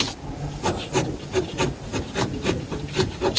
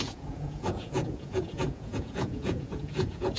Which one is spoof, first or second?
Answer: second